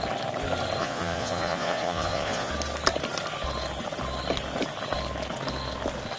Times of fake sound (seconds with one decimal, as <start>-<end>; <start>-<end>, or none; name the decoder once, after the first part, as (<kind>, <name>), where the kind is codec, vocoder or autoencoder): 0.8-2.5 (vocoder, Vocos)